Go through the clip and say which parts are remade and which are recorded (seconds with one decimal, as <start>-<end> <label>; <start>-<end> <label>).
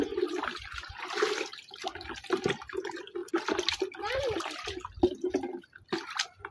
0.0-6.5 recorded